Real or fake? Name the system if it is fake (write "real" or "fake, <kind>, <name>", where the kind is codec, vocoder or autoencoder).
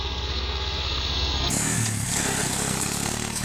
fake, codec, SNAC